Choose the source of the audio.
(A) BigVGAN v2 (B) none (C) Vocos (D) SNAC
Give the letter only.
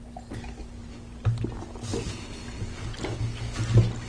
B